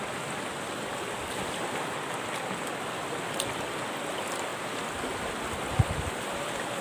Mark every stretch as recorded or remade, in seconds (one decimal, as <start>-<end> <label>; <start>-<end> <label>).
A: 0.0-6.8 recorded